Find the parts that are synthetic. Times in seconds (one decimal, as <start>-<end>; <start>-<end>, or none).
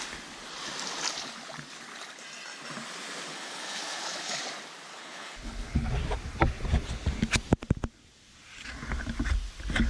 3.3-4.4; 4.9-5.9